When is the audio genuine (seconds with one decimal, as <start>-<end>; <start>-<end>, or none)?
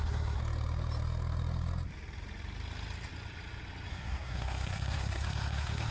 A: 0.4-3.9